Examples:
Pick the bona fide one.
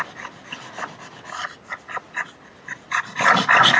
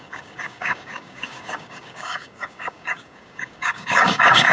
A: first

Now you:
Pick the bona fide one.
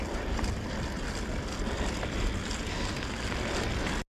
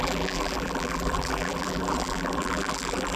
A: first